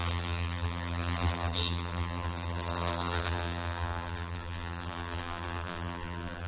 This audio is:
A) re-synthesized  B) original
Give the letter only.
A